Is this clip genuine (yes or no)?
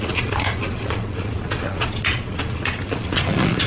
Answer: no